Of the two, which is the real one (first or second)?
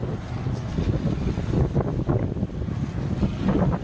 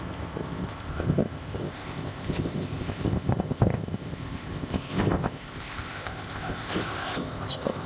first